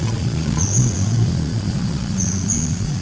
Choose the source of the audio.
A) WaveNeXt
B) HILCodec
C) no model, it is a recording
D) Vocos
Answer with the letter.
D